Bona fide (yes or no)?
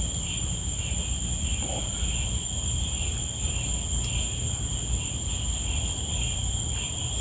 yes